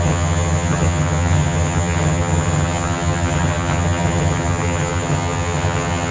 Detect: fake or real fake